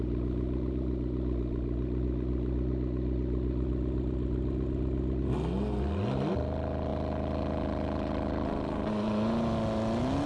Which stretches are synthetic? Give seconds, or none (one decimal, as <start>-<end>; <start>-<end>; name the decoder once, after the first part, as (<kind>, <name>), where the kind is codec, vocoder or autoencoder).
none